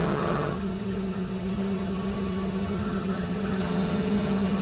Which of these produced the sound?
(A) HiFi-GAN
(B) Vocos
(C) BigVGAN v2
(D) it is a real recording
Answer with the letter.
A